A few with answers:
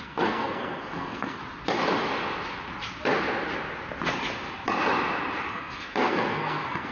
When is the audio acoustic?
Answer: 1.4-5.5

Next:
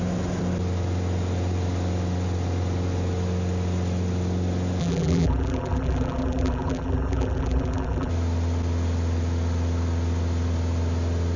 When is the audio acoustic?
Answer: 0.0-4.8; 8.1-11.4

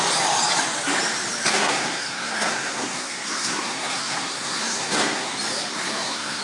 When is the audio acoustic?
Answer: 0.0-1.5; 5.3-5.7